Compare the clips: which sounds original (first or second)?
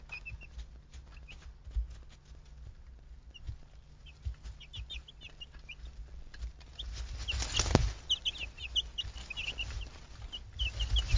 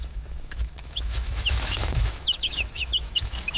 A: first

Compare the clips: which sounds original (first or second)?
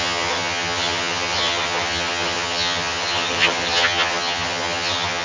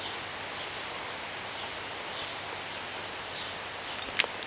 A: second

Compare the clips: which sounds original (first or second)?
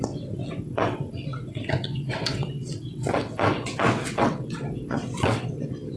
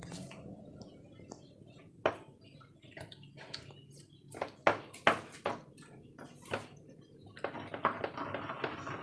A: second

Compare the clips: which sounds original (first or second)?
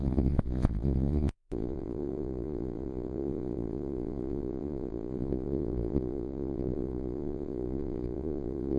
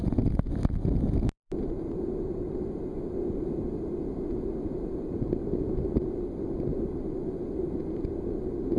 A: second